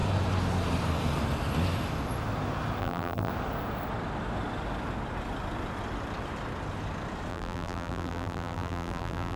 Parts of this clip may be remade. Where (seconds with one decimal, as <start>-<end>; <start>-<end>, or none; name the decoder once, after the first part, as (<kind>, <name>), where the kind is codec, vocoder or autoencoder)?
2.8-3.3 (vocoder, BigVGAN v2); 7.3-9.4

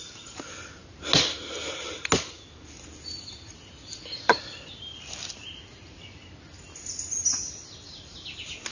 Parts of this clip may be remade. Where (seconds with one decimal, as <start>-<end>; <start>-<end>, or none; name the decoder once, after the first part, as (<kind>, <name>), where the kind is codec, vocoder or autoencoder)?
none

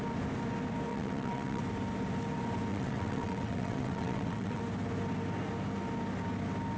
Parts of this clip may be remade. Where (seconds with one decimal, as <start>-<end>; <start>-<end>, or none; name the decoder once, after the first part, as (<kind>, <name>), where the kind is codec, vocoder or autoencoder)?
0.9-1.6 (vocoder, WaveNeXt); 2.7-4.6